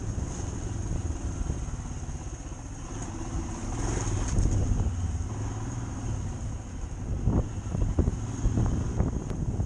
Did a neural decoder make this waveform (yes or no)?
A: no